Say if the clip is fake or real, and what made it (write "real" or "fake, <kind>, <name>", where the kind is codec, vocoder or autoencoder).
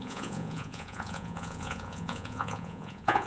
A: fake, vocoder, Vocos